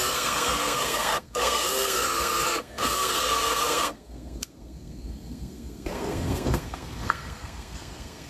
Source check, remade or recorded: remade